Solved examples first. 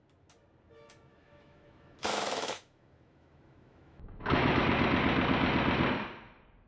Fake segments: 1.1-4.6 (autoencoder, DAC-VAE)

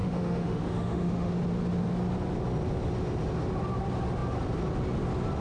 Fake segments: 0.0-1.3 (autoencoder, DAC-VAE)

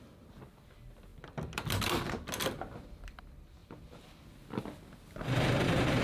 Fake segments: none

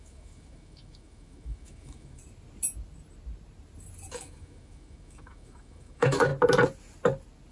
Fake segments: 0.0-2.2 (autoencoder, DAC-VAE); 4.1-6.3

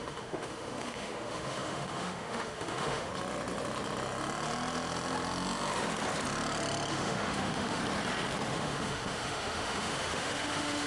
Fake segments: 0.0-3.1 (autoencoder, DAC-VAE); 6.9-7.8; 8.5-10.9